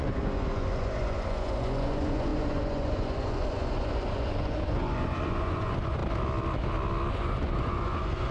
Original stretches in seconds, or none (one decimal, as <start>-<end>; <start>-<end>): 6.0-7.1